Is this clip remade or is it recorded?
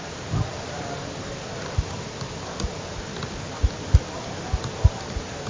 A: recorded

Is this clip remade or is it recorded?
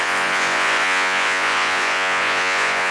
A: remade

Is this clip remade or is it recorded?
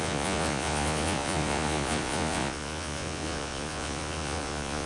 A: remade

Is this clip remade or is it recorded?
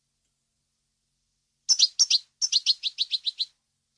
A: recorded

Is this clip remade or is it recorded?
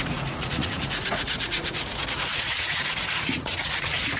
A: remade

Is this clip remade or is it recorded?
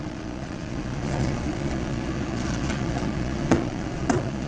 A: remade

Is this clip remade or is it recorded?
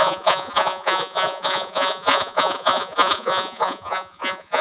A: remade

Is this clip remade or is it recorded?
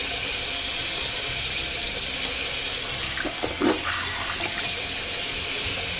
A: recorded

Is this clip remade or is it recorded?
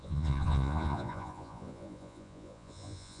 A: remade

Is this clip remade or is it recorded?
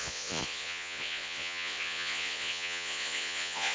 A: remade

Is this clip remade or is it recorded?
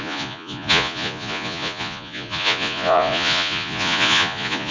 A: remade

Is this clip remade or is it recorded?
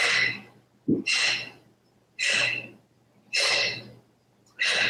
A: recorded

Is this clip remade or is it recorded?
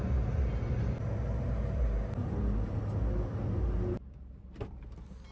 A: recorded